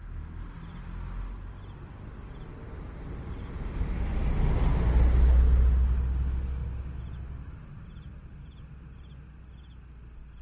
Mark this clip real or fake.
real